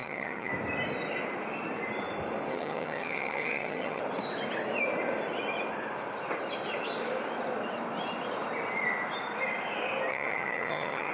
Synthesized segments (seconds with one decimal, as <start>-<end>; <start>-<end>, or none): 0.0-0.5; 2.5-4.0; 10.1-11.1